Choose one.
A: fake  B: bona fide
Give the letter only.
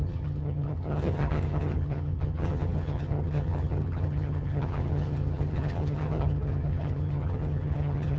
A